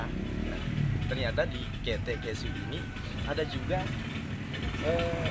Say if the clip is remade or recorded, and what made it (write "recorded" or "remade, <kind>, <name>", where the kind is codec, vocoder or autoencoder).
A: recorded